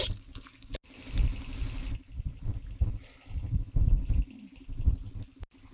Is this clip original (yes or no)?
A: yes